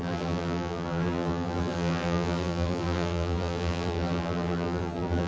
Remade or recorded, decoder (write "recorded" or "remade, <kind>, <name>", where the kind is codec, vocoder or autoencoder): remade, vocoder, BigVGAN v2